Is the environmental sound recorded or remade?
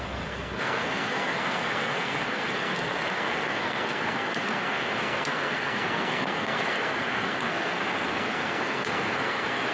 remade